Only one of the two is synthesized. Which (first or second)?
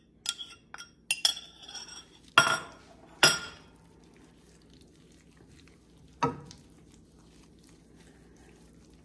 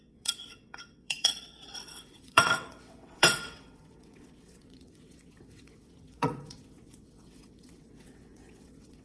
second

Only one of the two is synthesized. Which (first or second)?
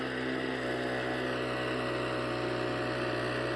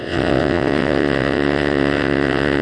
second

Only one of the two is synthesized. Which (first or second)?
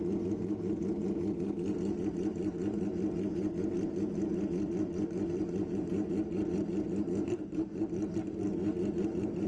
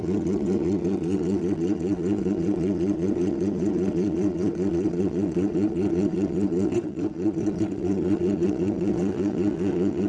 second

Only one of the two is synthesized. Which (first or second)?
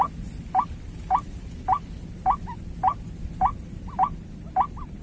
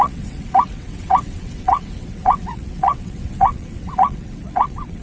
second